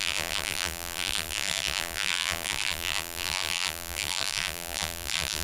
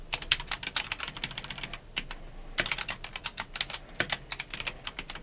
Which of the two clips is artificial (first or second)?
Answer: first